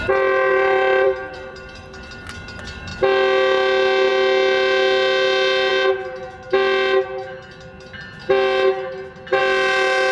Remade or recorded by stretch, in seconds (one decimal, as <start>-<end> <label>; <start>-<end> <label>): 0.0-0.5 recorded; 0.5-2.1 remade; 2.1-10.1 recorded